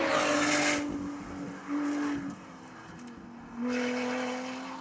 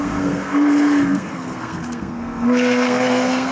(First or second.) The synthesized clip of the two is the second